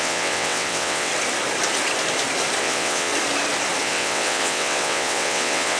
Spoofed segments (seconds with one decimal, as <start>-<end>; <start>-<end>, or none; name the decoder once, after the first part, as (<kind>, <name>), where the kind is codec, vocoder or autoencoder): 0.0-1.1 (vocoder, WaveNeXt); 2.6-3.1; 3.8-5.8